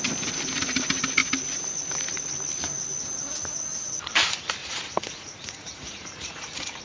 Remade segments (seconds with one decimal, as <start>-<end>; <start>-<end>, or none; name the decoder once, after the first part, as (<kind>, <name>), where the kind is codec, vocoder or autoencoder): 4.6-6.8 (vocoder, Vocos)